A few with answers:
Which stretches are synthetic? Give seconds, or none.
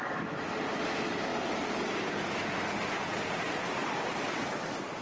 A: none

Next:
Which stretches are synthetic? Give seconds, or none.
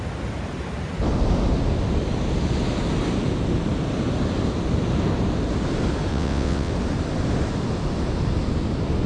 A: 6.1-6.7 (vocoder, WaveNeXt)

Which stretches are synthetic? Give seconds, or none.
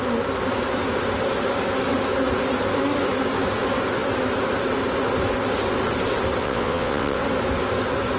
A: 6.4-7.2 (vocoder, WaveNeXt)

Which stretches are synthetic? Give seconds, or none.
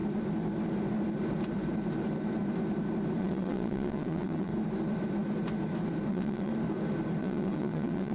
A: 3.2-4.5 (vocoder, WaveNeXt); 6.1-6.5; 7.2-8.1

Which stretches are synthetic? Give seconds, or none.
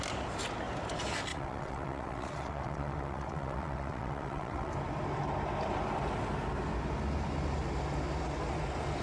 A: 1.3-4.7 (vocoder, WaveNeXt)